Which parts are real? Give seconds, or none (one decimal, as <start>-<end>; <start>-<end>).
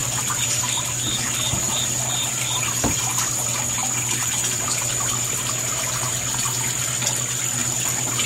3.0-3.8; 4.9-8.3